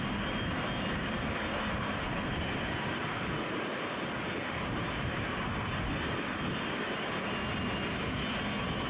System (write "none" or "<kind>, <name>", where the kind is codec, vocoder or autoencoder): none